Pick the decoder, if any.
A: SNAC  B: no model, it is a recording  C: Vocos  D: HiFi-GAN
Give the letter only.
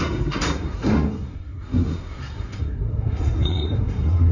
A